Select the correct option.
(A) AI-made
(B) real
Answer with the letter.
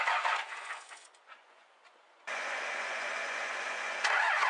A